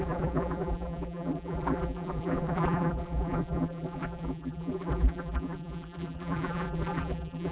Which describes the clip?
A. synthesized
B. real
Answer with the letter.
A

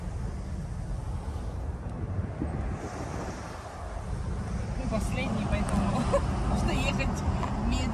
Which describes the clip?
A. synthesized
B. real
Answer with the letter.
B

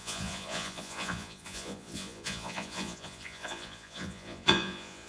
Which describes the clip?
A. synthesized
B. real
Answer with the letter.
A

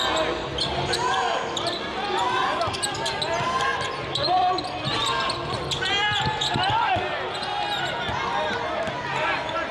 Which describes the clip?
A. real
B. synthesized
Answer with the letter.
A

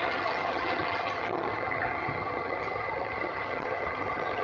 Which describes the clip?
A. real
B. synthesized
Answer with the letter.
B